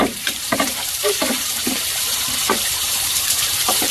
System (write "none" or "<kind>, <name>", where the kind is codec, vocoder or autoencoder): vocoder, BigVGAN v2